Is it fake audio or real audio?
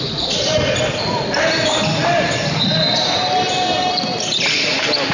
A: real